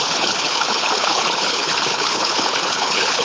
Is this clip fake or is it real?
fake